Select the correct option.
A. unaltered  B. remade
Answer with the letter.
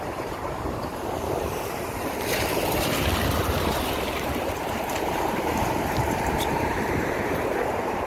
B